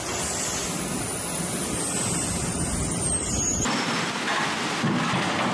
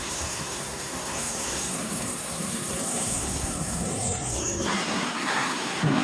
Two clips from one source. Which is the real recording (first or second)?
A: first